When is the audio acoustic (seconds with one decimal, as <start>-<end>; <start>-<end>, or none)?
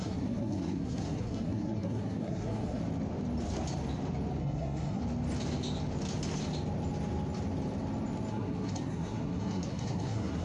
2.8-4.4; 5.0-8.3